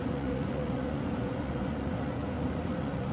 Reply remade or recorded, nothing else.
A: remade